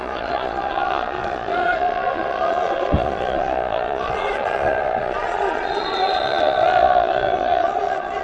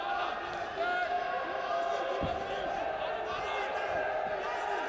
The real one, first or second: second